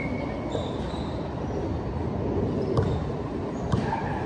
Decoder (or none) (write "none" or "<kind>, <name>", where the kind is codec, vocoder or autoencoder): none